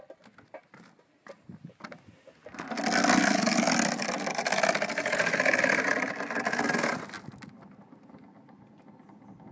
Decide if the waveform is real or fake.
real